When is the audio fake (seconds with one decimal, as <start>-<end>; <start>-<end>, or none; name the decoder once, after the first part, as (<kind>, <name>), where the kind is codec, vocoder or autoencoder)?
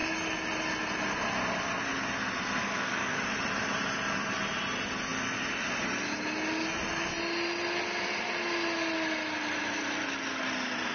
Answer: 2.6-3.2 (codec, DAC)